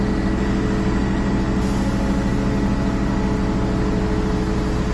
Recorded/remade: recorded